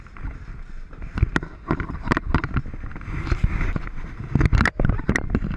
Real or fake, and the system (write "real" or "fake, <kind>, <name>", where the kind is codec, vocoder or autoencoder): real